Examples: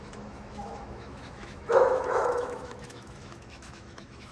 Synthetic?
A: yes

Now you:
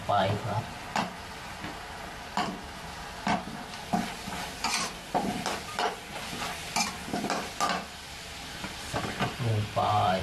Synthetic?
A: no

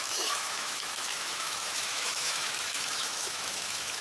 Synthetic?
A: yes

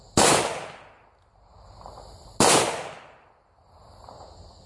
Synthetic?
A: no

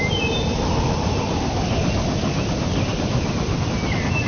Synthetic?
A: no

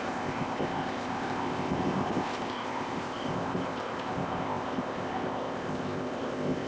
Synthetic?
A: yes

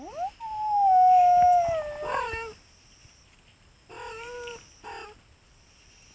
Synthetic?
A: no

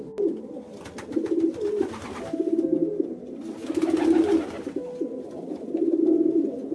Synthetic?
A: no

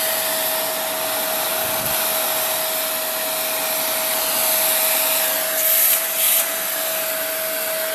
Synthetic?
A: no